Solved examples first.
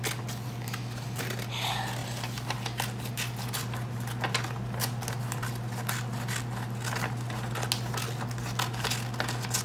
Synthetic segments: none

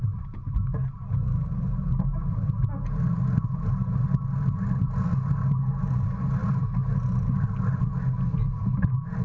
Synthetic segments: none

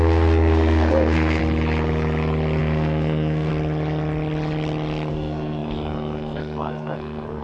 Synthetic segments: 0.0-1.4; 2.6-3.5; 5.1-7.4

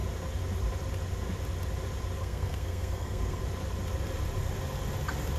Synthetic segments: 2.2-3.4